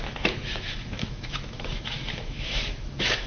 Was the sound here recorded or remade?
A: remade